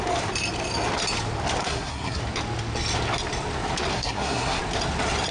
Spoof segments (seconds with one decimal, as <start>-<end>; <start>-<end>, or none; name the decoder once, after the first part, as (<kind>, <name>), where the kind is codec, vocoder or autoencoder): 1.6-2.2 (codec, SNAC); 3.9-4.6